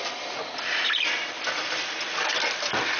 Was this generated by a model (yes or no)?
no